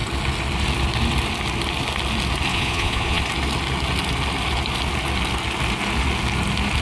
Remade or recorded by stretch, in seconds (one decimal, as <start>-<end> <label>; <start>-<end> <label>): 0.0-2.5 recorded; 2.5-3.2 remade; 3.2-6.8 recorded